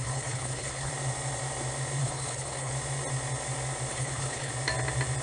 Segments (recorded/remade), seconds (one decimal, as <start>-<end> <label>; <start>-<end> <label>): 0.0-0.9 remade; 0.9-2.0 recorded; 2.0-2.7 remade; 2.7-3.9 recorded; 3.9-4.5 remade; 4.5-5.2 recorded